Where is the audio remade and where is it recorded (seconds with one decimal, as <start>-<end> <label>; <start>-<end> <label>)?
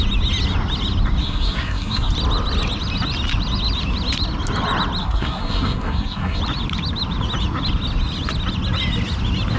0.0-1.2 recorded; 1.2-2.1 remade; 2.1-5.0 recorded; 5.0-6.4 remade; 6.4-9.6 recorded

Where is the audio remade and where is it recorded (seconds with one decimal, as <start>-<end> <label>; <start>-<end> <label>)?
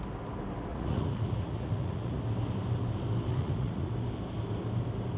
0.0-0.7 recorded; 0.7-2.2 remade; 2.2-3.3 recorded; 3.3-3.9 remade; 3.9-5.2 recorded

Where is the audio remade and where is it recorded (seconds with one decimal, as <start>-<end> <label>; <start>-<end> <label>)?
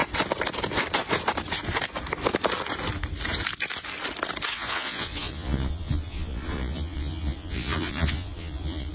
0.0-4.5 recorded; 4.5-8.9 remade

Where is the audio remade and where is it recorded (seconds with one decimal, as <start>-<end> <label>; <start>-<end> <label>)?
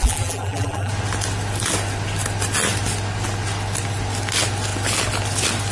0.0-0.9 remade; 0.9-5.7 recorded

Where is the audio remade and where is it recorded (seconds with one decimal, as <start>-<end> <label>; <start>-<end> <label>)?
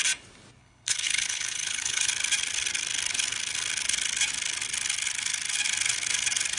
0.0-0.6 recorded; 0.6-2.1 remade; 2.1-6.6 recorded